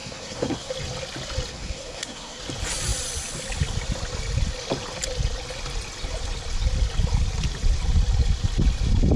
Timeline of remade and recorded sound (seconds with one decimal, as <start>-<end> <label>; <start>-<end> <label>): 0.0-0.7 remade; 0.7-1.5 recorded; 1.5-2.4 remade; 2.4-9.2 recorded